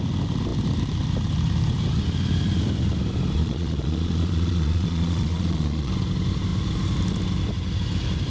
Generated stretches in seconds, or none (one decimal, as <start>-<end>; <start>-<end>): 3.4-5.9